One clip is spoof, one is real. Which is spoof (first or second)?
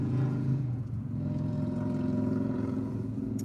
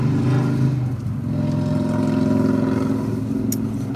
first